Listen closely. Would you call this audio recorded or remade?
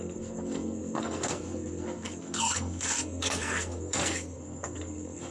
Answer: remade